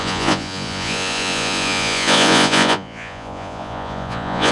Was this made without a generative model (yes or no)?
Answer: no